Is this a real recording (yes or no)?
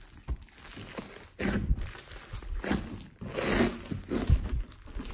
yes